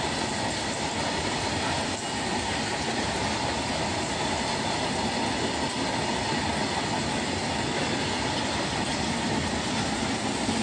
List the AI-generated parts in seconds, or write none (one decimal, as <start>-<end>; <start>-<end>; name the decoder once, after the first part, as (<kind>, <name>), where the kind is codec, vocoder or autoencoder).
none